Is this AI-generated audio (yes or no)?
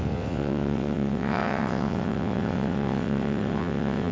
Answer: yes